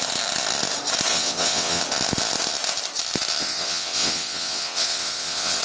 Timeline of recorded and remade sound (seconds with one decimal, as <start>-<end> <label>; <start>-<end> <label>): 0.0-1.1 recorded; 1.1-1.8 remade; 1.8-3.4 recorded; 3.4-5.6 remade